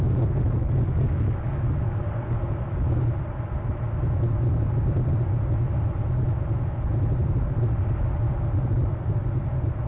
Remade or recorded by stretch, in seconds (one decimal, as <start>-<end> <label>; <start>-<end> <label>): 0.0-0.6 recorded; 0.6-2.0 remade; 2.0-9.9 recorded